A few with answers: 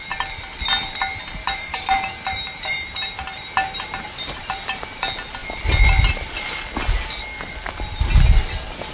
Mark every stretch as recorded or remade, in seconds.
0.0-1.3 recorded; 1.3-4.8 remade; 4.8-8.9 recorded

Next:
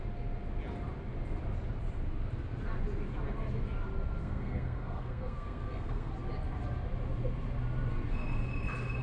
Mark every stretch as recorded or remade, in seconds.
0.0-4.2 recorded; 4.2-6.1 remade; 6.1-9.0 recorded

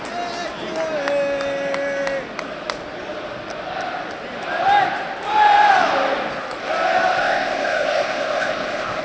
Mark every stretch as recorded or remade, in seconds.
0.0-7.2 recorded; 7.2-9.0 remade

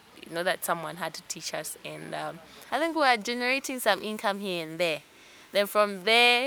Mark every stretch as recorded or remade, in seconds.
0.0-2.7 recorded; 2.7-6.5 remade

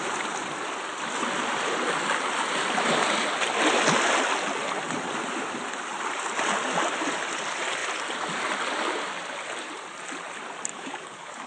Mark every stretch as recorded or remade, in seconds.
0.0-10.7 recorded; 10.7-11.5 remade